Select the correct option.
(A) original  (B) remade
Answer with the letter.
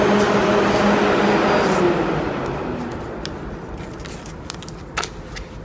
A